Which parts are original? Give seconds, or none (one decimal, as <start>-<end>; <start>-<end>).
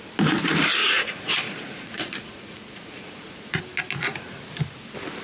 0.0-0.8; 3.6-5.2